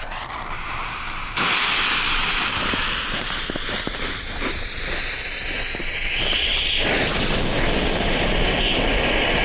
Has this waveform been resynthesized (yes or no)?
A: no